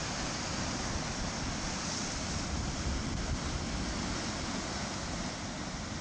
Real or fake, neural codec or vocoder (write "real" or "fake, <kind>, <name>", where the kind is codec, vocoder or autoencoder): real